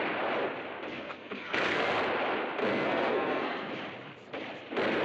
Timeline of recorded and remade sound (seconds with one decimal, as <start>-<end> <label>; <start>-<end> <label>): 0.0-0.9 recorded; 0.9-1.9 remade; 1.9-2.6 recorded; 2.6-3.7 remade; 3.7-5.0 recorded